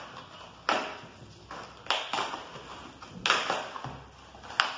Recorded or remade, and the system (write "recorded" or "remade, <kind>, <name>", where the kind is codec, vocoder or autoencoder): recorded